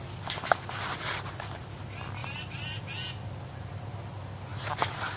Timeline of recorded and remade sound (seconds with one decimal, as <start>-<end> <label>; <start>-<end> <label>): 0.0-4.5 recorded; 4.5-5.2 remade

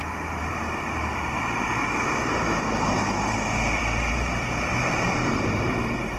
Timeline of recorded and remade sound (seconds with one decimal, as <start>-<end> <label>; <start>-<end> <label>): 0.0-0.4 recorded; 0.4-4.1 remade; 4.1-4.7 recorded; 4.7-6.2 remade

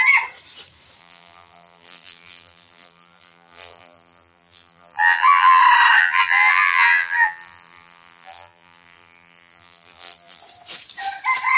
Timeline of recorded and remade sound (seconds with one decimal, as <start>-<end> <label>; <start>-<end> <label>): 0.0-1.0 recorded; 1.0-5.6 remade; 5.6-6.0 recorded; 6.0-10.4 remade; 10.4-11.6 recorded

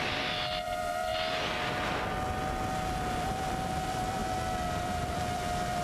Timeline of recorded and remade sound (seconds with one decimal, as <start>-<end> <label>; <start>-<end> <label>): 0.0-1.1 remade; 1.1-3.1 recorded; 3.1-4.2 remade; 4.2-4.8 recorded; 4.8-5.8 remade

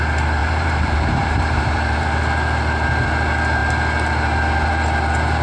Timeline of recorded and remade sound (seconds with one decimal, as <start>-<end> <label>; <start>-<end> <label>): 0.0-0.4 recorded; 0.4-2.2 remade; 2.2-5.4 recorded

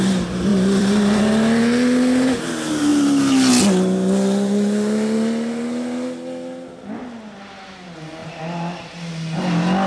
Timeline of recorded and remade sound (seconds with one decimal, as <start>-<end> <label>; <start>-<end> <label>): 0.0-0.5 recorded; 0.5-1.2 remade; 1.2-9.9 recorded

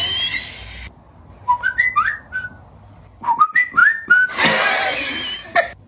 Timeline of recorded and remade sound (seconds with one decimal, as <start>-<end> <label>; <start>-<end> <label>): 0.0-5.9 recorded

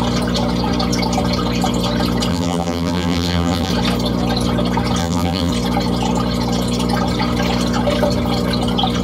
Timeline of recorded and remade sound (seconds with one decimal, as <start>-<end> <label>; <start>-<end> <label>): 0.0-2.3 recorded; 2.3-3.7 remade; 3.7-5.0 recorded; 5.0-5.5 remade; 5.5-9.0 recorded